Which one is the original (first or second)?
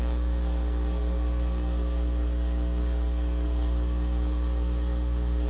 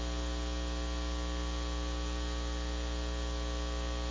second